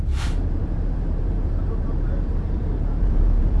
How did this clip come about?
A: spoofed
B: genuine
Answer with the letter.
A